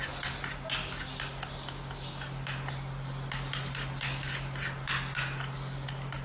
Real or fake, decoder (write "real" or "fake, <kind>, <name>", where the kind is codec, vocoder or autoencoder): real